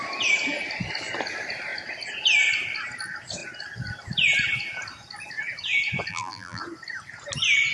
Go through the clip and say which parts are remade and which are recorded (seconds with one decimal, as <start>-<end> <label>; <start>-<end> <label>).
0.0-6.1 recorded; 6.1-6.6 remade; 6.6-7.7 recorded